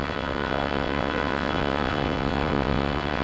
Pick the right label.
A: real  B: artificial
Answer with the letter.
B